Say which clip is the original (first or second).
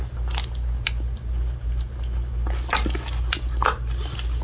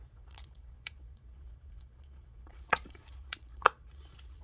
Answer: first